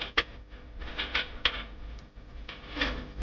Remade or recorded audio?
recorded